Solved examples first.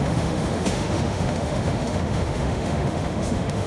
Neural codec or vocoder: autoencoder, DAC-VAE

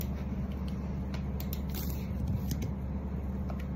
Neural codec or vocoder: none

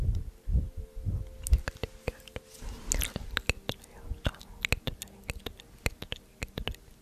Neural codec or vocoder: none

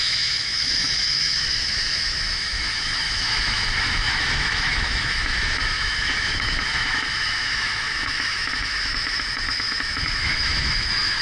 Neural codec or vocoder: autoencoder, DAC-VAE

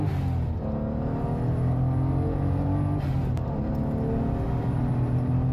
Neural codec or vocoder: none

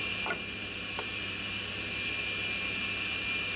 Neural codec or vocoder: none